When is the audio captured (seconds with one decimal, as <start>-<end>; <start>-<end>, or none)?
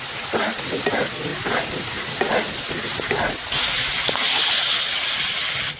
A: 0.0-5.8